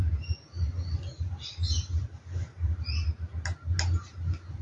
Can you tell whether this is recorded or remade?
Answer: recorded